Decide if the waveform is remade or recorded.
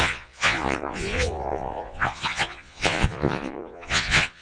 remade